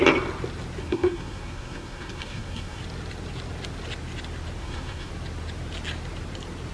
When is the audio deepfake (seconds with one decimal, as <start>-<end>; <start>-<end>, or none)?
0.8-2.8; 4.6-5.1